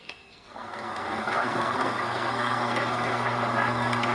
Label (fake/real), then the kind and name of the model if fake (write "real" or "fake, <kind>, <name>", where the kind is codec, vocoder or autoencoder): fake, codec, SNAC